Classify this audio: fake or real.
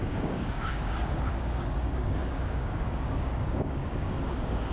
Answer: fake